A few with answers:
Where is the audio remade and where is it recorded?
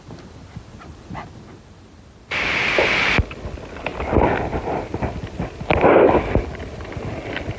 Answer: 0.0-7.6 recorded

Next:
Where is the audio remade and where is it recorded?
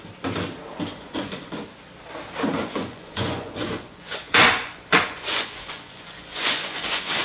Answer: 0.0-0.9 recorded; 0.9-1.5 remade; 1.5-2.6 recorded; 2.6-7.2 remade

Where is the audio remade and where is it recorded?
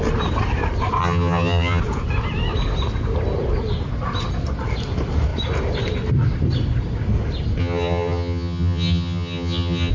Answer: 0.0-1.0 recorded; 1.0-1.8 remade; 1.8-7.6 recorded; 7.6-9.9 remade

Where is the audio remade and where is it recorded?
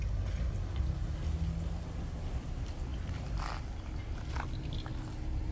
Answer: 0.0-2.9 recorded; 2.9-3.4 remade; 3.4-5.5 recorded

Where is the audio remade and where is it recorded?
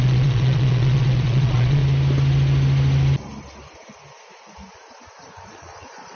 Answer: 0.0-1.8 remade; 1.8-5.5 recorded; 5.5-6.1 remade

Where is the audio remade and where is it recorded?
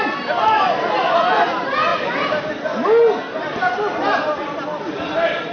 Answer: 0.0-5.5 recorded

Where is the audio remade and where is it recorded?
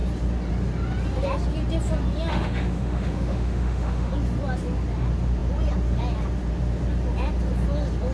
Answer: 0.0-2.3 recorded; 2.3-4.1 remade; 4.1-8.1 recorded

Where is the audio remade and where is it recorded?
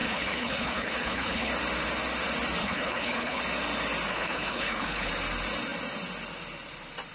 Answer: 0.0-1.5 remade; 1.5-2.6 recorded; 2.6-3.4 remade; 3.4-4.1 recorded; 4.1-5.1 remade; 5.1-7.1 recorded